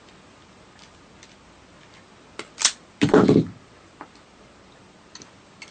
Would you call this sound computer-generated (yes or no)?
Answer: no